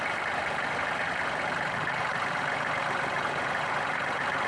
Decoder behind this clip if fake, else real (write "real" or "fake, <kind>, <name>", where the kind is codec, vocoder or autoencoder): fake, vocoder, BigVGAN v2